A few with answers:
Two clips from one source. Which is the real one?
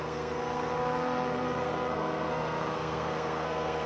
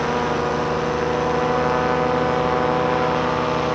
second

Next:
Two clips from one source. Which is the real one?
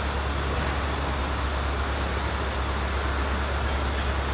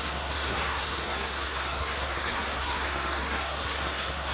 first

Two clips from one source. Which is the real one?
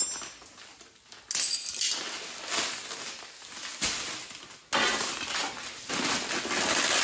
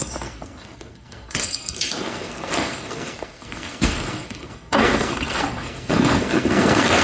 first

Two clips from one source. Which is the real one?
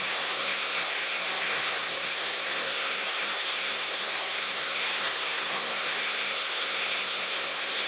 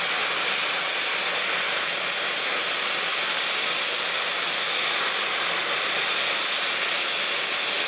second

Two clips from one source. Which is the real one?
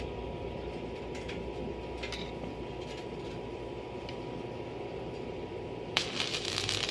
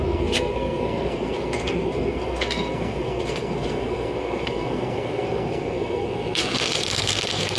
first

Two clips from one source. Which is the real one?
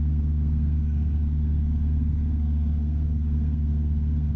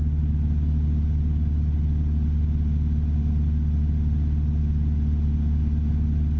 second